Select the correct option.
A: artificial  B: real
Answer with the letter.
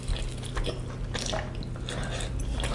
B